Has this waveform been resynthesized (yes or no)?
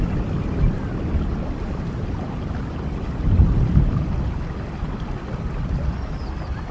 no